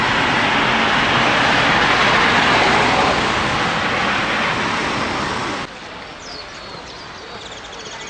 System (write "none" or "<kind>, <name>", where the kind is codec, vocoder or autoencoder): none